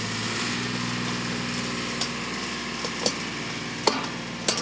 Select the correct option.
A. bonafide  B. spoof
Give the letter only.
A